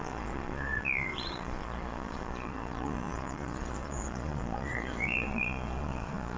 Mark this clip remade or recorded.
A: remade